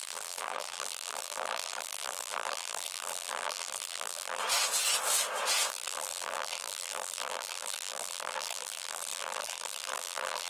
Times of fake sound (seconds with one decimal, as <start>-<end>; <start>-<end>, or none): 0.0-4.4; 5.7-10.5